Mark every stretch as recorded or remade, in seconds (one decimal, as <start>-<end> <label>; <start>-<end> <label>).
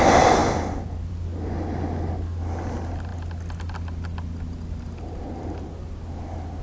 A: 0.0-6.6 recorded